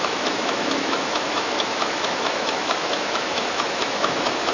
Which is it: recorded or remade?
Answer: remade